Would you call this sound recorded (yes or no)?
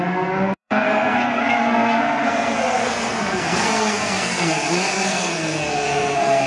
no